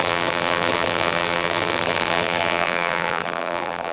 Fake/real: fake